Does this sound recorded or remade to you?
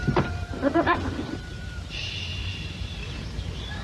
remade